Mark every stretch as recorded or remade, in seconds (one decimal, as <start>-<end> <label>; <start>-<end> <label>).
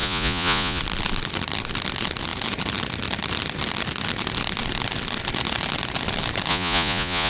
0.0-0.8 remade; 0.8-6.5 recorded; 6.5-7.3 remade